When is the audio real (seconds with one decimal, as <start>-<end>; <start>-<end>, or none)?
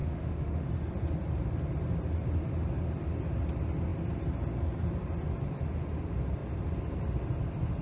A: 0.7-7.8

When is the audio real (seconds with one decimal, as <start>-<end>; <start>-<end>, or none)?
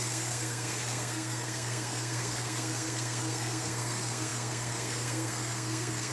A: none